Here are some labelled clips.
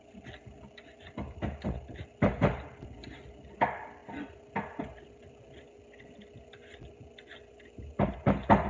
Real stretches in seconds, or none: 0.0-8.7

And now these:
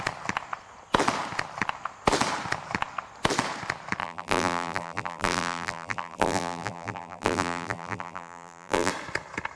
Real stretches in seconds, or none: 0.0-4.0; 8.9-9.6

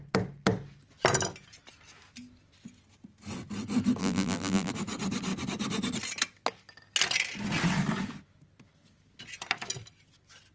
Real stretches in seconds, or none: 0.0-4.0; 4.7-10.5

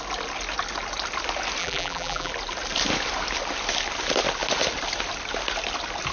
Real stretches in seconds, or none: 0.0-1.6; 2.3-6.1

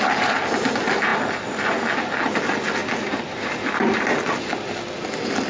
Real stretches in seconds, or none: 0.0-5.5

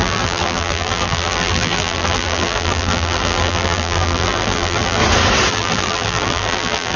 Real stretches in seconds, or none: 5.0-5.5